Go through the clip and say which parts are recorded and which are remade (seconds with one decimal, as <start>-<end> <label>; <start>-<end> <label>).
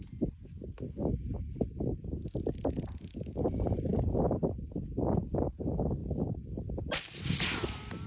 0.0-8.1 recorded